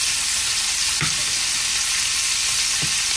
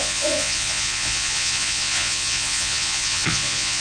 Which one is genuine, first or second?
first